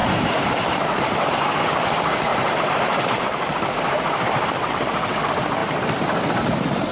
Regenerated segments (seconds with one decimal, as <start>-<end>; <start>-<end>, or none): 0.0-1.6; 2.3-4.7